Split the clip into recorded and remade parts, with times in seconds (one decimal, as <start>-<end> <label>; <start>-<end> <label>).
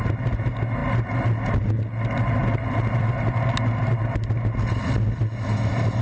0.0-6.0 recorded